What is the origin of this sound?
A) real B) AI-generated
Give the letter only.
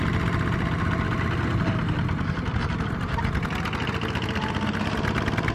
A